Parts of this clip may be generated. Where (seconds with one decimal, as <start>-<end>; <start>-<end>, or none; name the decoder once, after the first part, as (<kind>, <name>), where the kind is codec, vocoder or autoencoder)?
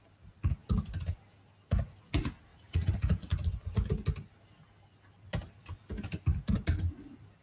2.5-3.3 (vocoder, Vocos)